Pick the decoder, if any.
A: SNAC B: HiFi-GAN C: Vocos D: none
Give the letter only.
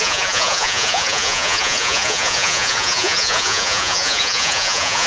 C